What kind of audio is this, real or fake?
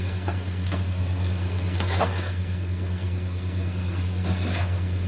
fake